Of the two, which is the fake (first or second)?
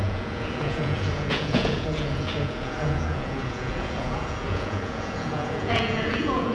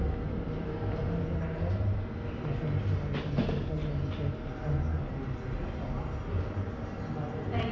first